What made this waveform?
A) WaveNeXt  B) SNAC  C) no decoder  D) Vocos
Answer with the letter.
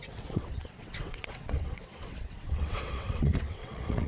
A